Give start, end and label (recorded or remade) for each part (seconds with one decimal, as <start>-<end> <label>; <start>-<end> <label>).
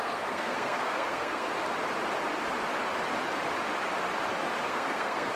0.0-1.5 remade; 1.5-4.6 recorded; 4.6-5.4 remade